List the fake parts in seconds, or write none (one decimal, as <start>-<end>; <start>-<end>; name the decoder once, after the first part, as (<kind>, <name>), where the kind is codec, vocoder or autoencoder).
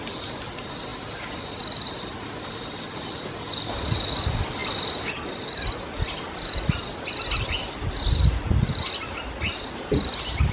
none